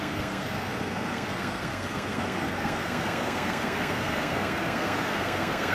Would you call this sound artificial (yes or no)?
yes